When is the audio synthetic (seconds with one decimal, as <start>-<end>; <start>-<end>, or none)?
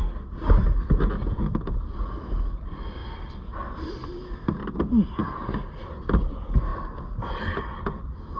none